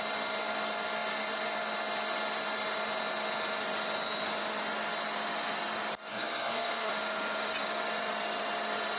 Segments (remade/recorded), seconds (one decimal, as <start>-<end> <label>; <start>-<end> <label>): 0.0-6.1 recorded; 6.1-6.9 remade; 6.9-9.0 recorded